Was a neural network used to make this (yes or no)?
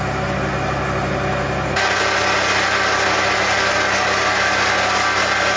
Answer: no